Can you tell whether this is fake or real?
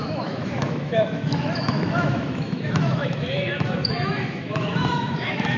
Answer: fake